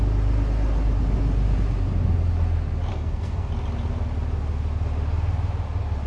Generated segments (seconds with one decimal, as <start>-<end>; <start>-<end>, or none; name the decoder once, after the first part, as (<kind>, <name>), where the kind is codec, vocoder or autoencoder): 2.9-3.5 (codec, SNAC)